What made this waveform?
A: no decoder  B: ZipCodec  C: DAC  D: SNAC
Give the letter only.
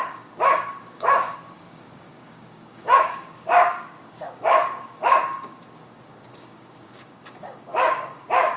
C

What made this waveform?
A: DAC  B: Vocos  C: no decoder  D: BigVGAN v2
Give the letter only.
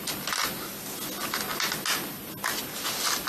C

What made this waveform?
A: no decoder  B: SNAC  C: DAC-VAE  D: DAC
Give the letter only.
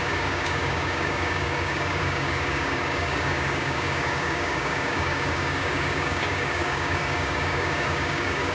D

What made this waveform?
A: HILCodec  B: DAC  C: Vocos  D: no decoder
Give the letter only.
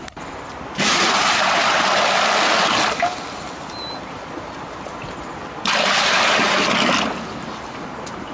D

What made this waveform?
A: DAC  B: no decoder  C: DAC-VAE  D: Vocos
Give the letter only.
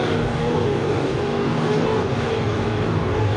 A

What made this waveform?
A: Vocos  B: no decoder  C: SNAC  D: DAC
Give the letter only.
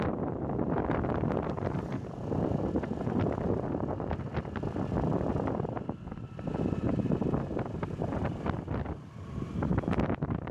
B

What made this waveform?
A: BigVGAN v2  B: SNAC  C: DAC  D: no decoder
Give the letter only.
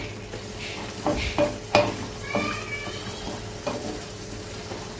D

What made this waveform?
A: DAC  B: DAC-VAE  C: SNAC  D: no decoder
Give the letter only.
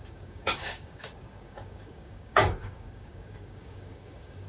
A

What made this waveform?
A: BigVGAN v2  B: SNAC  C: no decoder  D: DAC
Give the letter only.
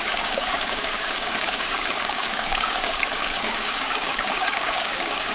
D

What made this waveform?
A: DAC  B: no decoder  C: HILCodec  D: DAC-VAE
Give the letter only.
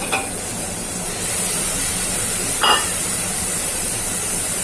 B